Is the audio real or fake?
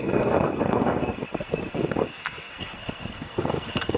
fake